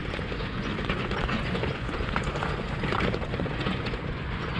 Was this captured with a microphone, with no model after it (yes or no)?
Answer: no